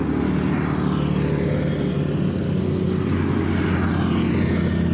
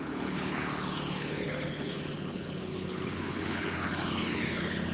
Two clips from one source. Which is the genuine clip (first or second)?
first